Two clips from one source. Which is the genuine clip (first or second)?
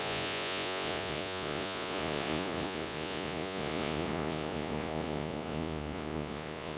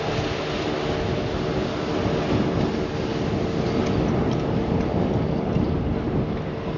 second